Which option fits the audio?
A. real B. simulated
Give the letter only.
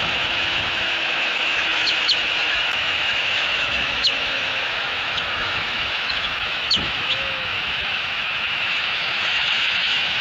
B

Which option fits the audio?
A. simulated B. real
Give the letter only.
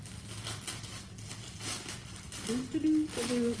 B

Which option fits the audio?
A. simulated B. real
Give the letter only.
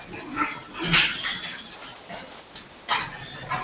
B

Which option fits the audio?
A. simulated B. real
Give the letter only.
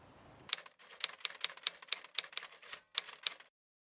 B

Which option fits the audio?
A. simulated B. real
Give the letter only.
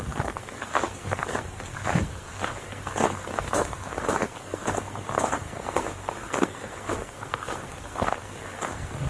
A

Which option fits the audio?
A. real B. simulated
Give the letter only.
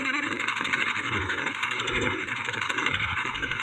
B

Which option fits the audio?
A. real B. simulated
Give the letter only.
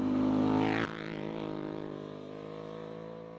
A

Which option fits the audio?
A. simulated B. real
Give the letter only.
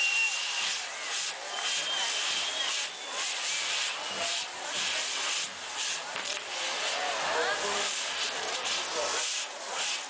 B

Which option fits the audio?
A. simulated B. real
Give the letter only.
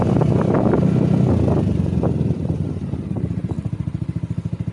B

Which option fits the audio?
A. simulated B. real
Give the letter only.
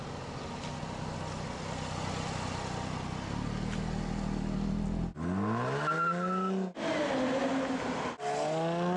B